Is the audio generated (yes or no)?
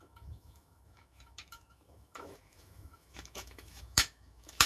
yes